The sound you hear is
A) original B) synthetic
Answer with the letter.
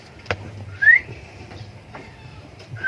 B